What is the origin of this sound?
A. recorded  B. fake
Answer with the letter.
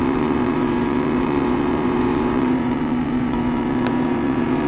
B